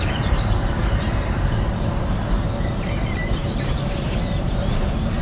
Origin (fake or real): fake